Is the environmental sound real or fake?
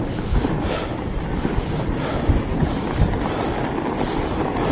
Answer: real